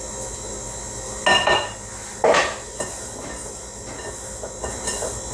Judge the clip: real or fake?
real